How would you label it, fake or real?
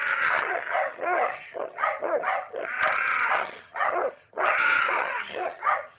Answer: fake